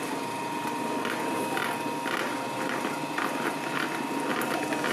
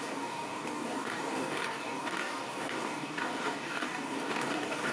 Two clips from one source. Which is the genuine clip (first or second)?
first